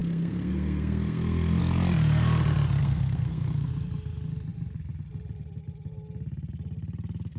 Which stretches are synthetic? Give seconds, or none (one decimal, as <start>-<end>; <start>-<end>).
0.0-1.6; 2.8-3.7